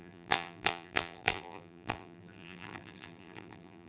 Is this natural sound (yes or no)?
no